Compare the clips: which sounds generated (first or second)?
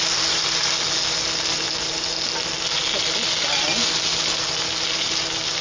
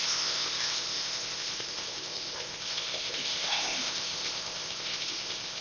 second